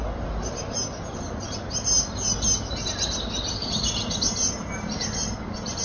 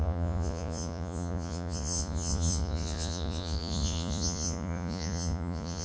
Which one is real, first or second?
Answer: first